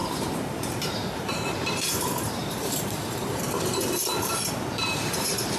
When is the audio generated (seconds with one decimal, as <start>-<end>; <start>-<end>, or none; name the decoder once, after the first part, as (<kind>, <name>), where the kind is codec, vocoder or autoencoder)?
0.0-3.4 (vocoder, BigVGAN v2); 4.1-5.6